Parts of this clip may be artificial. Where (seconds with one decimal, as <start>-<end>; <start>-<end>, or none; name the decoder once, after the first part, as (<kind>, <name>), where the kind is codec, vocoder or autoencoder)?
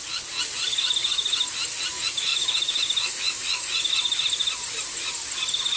2.3-3.9 (autoencoder, DAC-VAE)